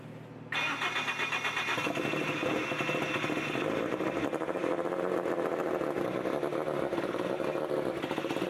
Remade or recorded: recorded